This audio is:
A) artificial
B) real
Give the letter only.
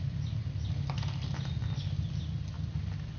B